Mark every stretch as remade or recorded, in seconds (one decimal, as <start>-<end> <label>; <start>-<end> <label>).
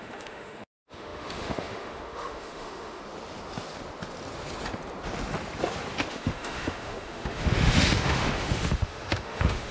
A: 0.0-3.0 remade; 3.0-6.1 recorded; 6.1-9.7 remade